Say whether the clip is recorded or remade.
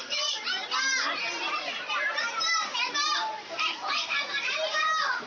remade